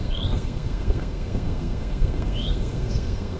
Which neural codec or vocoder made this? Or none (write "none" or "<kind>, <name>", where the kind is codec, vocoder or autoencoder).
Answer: codec, SNAC